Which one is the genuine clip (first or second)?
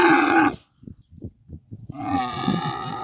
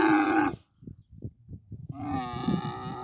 second